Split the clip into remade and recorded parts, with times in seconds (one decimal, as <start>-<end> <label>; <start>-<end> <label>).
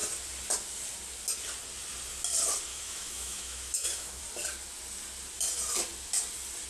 0.0-2.7 recorded; 2.7-4.2 remade; 4.2-6.7 recorded